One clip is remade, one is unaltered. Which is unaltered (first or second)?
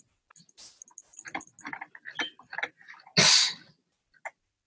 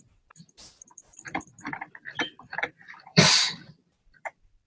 first